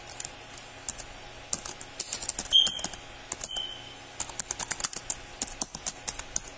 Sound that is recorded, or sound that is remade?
recorded